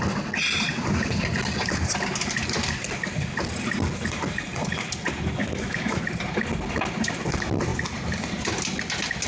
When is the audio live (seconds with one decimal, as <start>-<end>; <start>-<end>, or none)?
0.0-5.4; 6.0-9.3